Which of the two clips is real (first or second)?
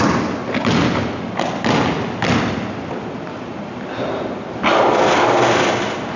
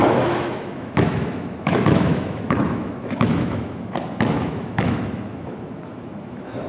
first